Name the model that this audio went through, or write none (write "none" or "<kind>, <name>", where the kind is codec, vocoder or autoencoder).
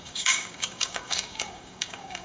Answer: codec, DAC